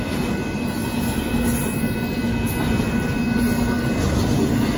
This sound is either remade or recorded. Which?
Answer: recorded